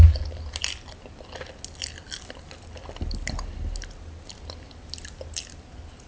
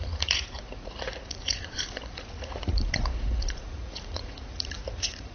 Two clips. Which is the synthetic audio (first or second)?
second